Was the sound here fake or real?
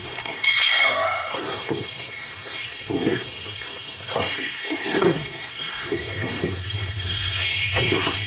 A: fake